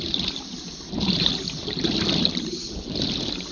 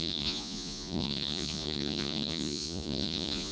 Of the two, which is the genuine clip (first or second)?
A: first